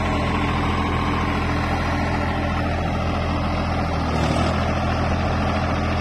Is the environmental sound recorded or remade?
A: recorded